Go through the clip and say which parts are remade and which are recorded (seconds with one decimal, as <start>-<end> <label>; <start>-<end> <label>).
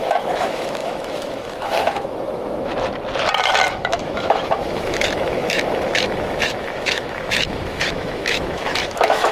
0.0-2.7 remade; 2.7-3.7 recorded; 3.7-9.3 remade